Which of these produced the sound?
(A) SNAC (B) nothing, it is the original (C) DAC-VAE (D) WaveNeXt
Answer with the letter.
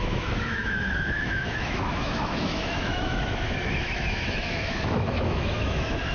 C